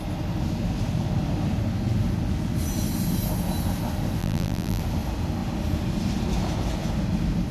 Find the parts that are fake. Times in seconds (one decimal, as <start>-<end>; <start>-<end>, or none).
4.2-4.8